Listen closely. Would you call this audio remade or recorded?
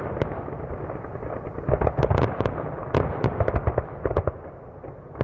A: recorded